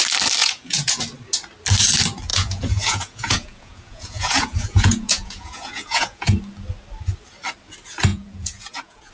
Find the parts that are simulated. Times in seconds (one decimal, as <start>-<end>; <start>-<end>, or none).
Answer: 0.4-1.0; 2.3-6.4; 8.1-9.1